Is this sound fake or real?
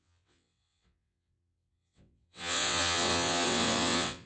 fake